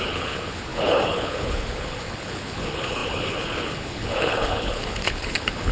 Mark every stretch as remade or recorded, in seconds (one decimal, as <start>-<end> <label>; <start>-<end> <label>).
0.0-5.7 remade

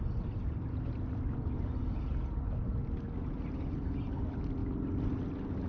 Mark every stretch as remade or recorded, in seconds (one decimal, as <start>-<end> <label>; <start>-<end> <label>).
0.0-5.7 recorded

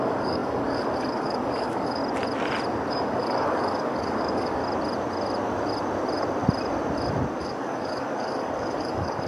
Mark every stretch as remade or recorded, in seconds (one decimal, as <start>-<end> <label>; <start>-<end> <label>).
0.0-2.0 remade; 2.0-2.9 recorded; 2.9-4.6 remade; 4.6-7.4 recorded; 7.4-9.3 remade

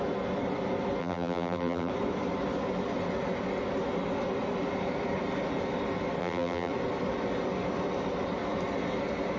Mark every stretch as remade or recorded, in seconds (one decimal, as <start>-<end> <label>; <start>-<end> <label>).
0.0-1.0 recorded; 1.0-1.9 remade; 1.9-6.2 recorded; 6.2-6.7 remade; 6.7-9.4 recorded

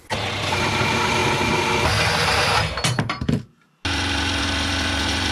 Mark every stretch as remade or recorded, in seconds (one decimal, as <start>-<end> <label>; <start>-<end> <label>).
0.0-5.3 recorded